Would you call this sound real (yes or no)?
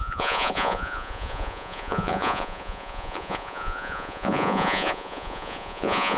no